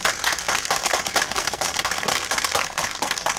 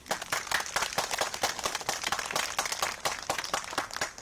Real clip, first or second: second